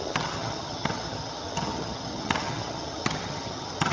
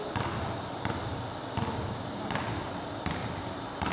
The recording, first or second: second